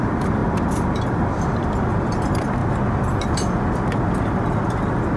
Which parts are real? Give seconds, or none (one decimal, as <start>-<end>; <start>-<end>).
2.6-5.2

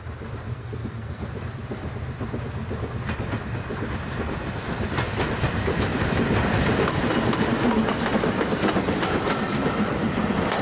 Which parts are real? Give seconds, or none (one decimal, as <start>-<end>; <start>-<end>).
0.0-0.5; 1.4-10.6

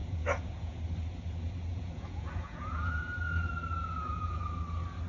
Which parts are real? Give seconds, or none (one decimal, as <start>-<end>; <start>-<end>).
0.8-1.7; 3.0-3.8; 4.5-5.1

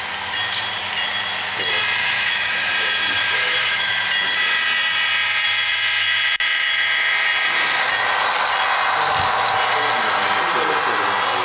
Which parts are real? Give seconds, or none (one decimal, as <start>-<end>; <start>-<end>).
0.0-2.0; 2.7-3.1; 3.9-11.4

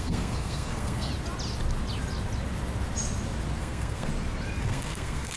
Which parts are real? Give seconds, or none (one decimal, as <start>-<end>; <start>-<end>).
1.1-3.6; 4.1-4.6

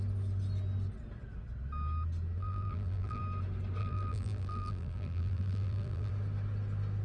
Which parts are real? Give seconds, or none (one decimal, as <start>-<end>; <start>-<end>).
0.0-2.4; 3.2-3.8; 6.1-7.0

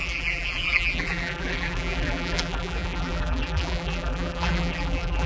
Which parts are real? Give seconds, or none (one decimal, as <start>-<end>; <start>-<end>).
none

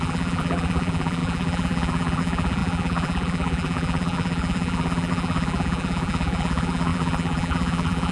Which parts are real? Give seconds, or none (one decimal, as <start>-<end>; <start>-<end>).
none